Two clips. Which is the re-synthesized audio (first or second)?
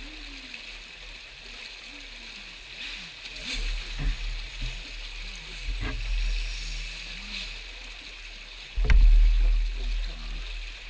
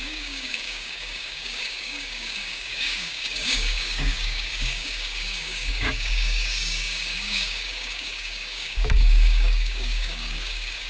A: second